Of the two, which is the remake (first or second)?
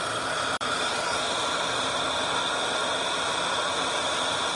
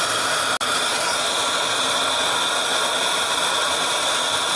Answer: first